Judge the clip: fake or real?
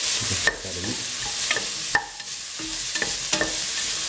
real